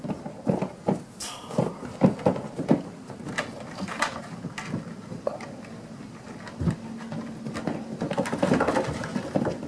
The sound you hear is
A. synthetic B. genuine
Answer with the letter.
B